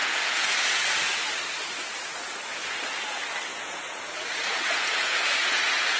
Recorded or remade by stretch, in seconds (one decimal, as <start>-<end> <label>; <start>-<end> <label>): 0.0-0.9 remade; 0.9-3.5 recorded; 3.5-6.0 remade